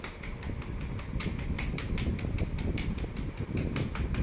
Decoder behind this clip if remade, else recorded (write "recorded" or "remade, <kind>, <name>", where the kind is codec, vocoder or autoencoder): recorded